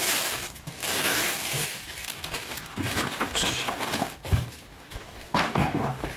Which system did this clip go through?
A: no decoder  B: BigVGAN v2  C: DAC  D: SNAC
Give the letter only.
C